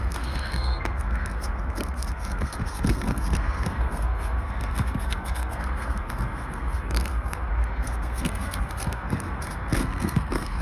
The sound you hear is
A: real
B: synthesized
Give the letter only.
B